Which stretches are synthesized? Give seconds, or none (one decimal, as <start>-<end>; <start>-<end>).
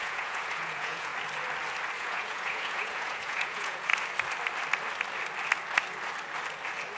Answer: 0.0-1.1; 2.0-3.9